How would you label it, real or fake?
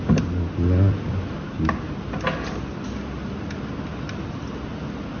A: real